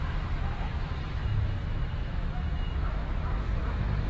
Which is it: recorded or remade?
remade